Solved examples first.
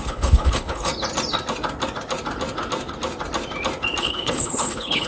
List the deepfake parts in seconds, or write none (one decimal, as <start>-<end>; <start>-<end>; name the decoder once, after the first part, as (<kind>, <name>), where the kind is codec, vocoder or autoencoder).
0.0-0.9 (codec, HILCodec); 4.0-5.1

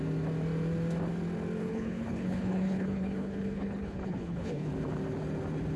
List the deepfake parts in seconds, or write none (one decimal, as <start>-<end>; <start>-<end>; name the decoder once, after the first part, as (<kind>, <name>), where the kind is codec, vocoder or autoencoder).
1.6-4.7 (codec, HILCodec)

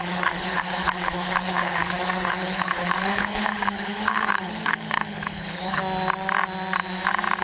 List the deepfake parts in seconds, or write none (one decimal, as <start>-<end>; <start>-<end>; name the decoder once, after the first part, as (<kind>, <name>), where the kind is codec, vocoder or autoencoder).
0.0-5.8 (codec, HILCodec)

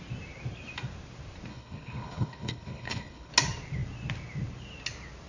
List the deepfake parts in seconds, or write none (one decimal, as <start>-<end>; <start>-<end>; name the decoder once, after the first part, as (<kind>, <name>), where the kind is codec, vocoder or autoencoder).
1.5-3.3 (codec, HILCodec)